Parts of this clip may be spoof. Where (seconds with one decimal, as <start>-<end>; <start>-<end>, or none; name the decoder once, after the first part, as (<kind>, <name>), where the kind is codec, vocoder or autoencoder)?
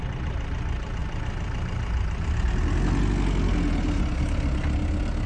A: none